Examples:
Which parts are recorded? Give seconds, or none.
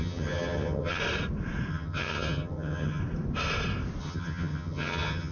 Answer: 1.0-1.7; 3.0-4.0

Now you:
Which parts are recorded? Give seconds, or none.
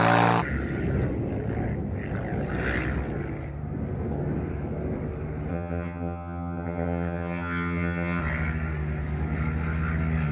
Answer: 0.0-5.5; 8.2-10.3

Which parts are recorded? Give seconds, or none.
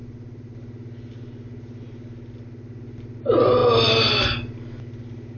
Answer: 0.0-5.4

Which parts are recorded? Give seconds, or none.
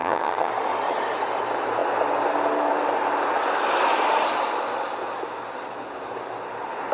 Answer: 0.5-6.9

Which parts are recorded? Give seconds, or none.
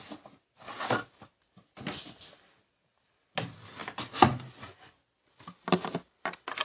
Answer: 0.0-6.6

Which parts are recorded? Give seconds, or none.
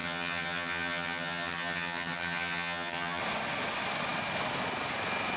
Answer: 3.2-5.4